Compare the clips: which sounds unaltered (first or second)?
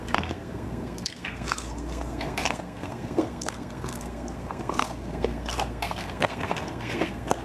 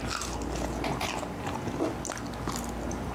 second